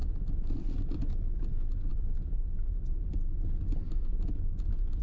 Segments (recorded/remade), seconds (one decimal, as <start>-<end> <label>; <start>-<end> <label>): 0.0-5.0 recorded